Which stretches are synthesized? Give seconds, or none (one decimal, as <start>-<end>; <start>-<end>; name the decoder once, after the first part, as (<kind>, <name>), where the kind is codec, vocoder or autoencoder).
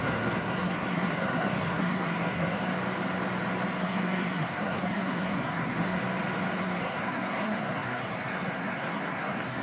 0.0-2.7 (codec, SNAC); 3.8-6.0; 6.6-9.6